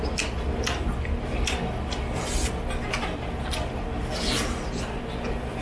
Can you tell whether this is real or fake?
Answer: real